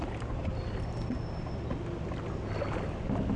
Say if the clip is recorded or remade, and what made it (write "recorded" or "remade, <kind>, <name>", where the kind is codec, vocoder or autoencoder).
recorded